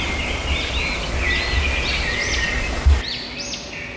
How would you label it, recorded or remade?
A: recorded